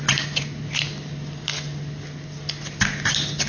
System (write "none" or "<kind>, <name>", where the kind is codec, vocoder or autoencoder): none